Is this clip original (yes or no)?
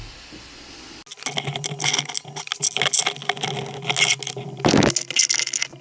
yes